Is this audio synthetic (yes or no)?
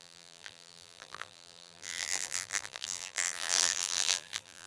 yes